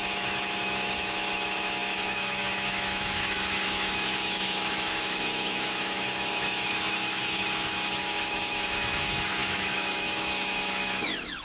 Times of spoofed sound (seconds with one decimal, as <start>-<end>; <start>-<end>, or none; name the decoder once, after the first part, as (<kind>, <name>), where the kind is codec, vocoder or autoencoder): 0.0-11.4 (autoencoder, DAC-VAE)